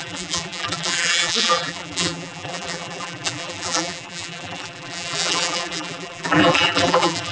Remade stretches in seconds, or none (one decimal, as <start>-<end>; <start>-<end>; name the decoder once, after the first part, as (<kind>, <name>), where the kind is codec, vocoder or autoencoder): 0.0-7.3 (vocoder, BigVGAN v2)